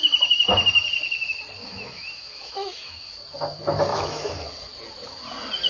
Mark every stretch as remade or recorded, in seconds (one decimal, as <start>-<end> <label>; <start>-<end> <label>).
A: 0.0-1.6 recorded; 1.6-3.1 remade; 3.1-3.9 recorded; 3.9-4.4 remade; 4.4-5.7 recorded